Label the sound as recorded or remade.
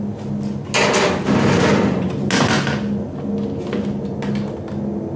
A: recorded